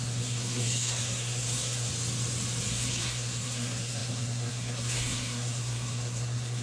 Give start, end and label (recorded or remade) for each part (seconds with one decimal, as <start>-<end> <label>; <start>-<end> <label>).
0.0-1.9 remade; 1.9-2.7 recorded; 2.7-6.6 remade